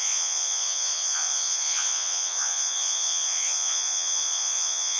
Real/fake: fake